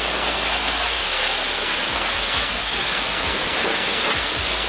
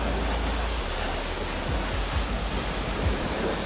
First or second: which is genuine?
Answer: second